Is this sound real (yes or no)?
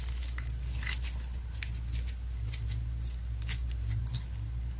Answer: yes